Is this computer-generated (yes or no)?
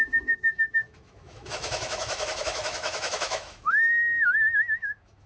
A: yes